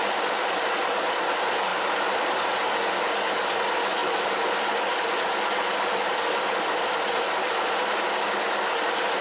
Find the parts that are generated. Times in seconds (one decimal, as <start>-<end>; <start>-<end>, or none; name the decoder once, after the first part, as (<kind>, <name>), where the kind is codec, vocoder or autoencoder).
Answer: none